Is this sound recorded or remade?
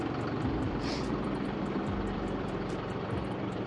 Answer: remade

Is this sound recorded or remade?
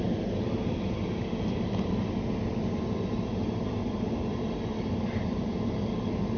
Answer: recorded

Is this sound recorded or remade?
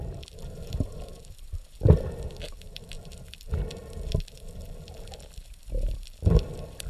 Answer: remade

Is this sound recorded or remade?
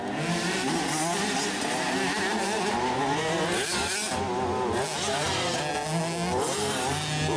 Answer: recorded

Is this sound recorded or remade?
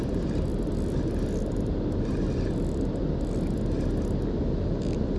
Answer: recorded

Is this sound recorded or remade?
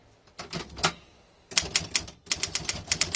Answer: recorded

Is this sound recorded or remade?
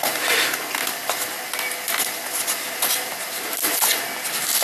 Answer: recorded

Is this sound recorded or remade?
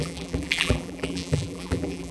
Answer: remade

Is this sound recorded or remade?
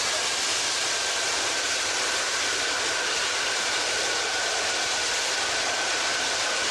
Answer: recorded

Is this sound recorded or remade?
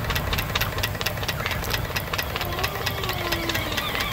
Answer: recorded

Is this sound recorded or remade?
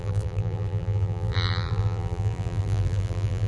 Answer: remade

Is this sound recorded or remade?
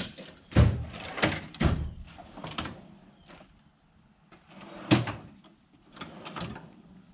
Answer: recorded